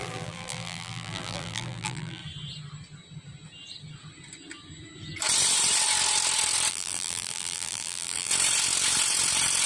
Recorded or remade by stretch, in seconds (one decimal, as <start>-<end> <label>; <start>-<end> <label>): 0.0-2.2 remade; 2.2-6.7 recorded; 6.7-8.3 remade; 8.3-9.7 recorded